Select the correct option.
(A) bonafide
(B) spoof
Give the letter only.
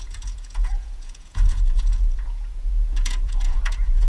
B